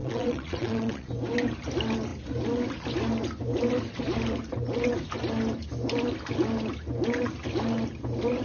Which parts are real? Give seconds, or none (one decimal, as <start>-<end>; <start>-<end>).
1.1-8.4

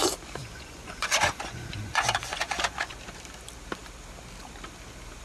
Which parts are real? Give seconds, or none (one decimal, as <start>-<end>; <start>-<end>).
0.0-0.4; 3.0-5.2